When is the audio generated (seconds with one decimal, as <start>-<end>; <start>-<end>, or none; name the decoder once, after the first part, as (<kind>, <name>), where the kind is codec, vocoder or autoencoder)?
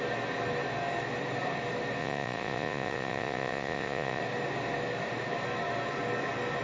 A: 2.0-4.2 (vocoder, Vocos)